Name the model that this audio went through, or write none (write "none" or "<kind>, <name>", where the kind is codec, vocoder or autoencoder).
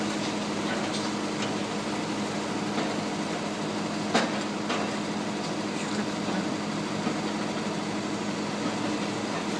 none